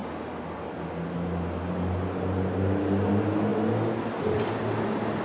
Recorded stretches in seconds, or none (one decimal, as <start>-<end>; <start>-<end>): 0.0-5.2